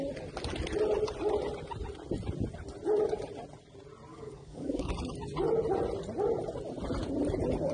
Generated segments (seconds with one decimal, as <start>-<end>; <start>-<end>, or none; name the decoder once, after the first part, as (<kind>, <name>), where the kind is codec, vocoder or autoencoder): 4.1-4.9 (codec, DAC)